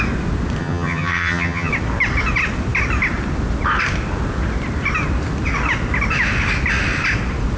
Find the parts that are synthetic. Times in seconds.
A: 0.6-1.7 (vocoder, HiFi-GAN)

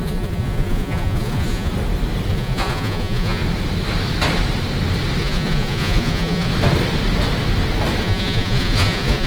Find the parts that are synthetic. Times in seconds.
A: 0.0-1.7 (vocoder, Vocos); 2.3-3.4; 5.2-6.5; 8.0-9.3

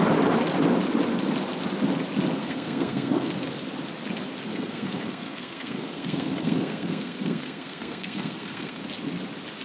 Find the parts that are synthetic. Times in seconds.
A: 2.4-3.3 (codec, SNAC); 4.5-8.8

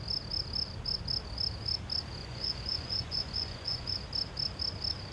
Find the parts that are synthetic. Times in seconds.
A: 2.2-4.0 (vocoder, Vocos)

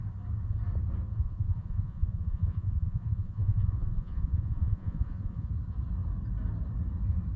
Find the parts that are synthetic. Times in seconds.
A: 1.1-5.5 (vocoder, Vocos)

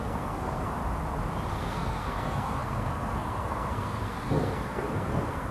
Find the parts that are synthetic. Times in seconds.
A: 0.0-0.8 (codec, SNAC); 1.5-5.5

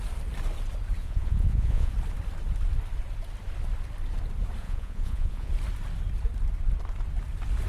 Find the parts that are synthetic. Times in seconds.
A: 1.0-1.9 (vocoder, Vocos); 4.6-5.5